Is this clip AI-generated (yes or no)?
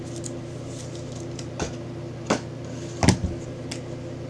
no